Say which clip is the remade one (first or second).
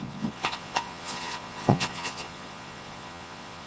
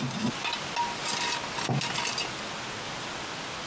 first